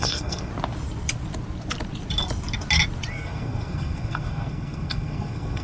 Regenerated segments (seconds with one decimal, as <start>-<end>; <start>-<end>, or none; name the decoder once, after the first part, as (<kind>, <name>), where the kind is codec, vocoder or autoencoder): 0.0-0.5 (codec, SNAC); 3.1-5.6